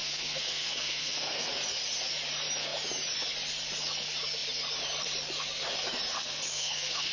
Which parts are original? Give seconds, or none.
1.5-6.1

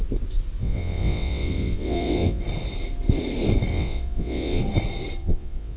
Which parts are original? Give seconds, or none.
0.0-0.6; 2.4-3.7; 4.6-5.2

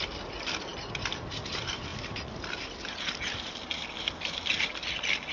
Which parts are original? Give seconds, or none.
0.0-5.3

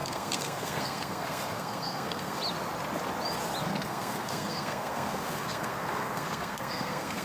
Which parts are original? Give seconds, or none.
2.4-3.6

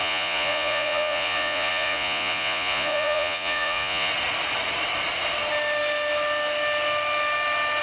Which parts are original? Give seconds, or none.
4.1-7.8

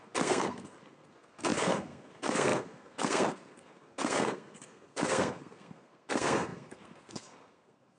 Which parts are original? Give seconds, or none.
none

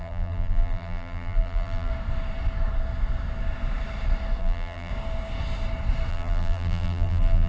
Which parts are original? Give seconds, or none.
1.9-4.4; 4.9-6.1

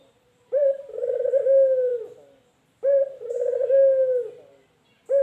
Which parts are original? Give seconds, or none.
1.2-5.2